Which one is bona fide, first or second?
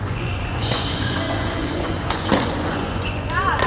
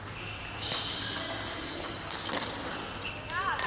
second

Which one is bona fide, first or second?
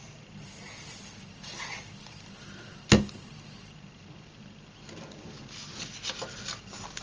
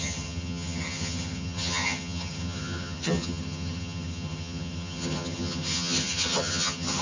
first